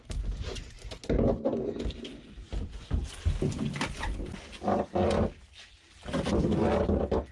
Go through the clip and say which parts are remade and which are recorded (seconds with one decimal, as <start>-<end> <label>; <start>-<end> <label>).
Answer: 0.0-7.3 recorded